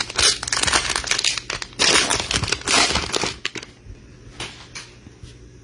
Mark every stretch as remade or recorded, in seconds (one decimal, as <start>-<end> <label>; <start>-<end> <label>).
0.0-5.6 recorded